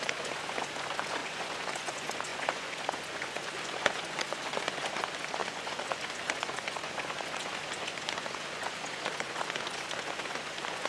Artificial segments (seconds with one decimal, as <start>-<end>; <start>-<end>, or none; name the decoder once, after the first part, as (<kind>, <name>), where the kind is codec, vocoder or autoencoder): 0.0-10.9 (vocoder, Vocos)

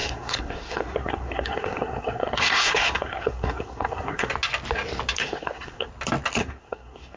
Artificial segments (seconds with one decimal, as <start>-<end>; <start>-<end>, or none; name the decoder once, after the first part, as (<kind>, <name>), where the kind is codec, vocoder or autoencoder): 0.0-4.3 (codec, SNAC); 5.2-5.9; 6.4-7.2

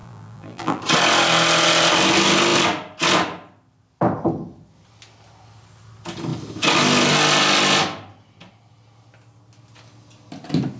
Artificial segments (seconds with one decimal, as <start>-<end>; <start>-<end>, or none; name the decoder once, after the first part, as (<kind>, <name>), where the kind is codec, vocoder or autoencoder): 0.0-0.8 (vocoder, BigVGAN v2)

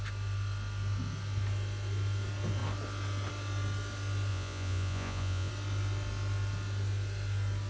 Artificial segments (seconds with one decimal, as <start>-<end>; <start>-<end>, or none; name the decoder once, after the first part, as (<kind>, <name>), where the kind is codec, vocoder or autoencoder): 4.3-5.5 (vocoder, Vocos)

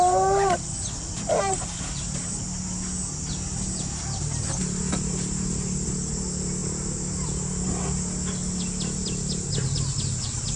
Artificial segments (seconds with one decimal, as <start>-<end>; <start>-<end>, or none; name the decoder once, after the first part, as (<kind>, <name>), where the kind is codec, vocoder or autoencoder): none

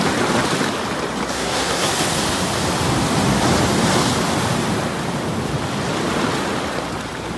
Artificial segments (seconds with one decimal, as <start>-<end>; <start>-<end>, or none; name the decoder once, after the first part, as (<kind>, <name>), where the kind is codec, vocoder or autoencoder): 1.3-1.9 (codec, SNAC)

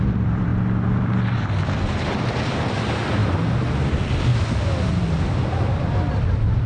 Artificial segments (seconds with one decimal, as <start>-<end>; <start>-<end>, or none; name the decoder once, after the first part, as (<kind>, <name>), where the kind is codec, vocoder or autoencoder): 0.0-3.2 (vocoder, BigVGAN v2); 3.9-6.7